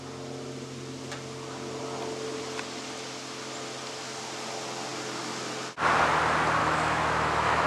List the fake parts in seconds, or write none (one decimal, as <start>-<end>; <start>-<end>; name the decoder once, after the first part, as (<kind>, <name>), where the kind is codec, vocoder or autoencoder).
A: 6.6-7.7 (autoencoder, DAC-VAE)